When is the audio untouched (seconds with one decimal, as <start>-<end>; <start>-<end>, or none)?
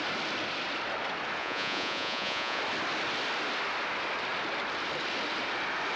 0.0-1.4; 2.6-6.0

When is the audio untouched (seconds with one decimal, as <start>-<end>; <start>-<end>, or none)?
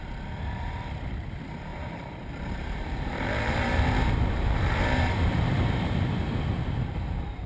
0.0-1.7; 5.9-7.5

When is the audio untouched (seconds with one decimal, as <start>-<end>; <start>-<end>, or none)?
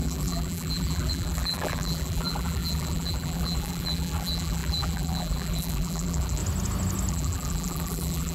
6.4-7.1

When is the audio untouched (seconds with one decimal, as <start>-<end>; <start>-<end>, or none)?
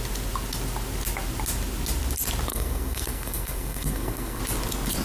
0.0-2.5; 4.4-5.0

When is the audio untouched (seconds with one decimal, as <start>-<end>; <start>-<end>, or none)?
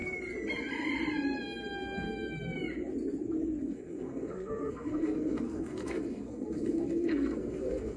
0.0-3.6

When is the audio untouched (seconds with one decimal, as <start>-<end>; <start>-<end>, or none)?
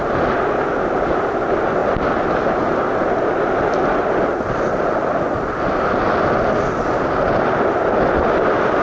0.0-8.8